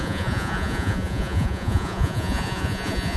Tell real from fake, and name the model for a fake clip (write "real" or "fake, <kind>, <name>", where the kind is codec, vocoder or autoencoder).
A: fake, vocoder, Vocos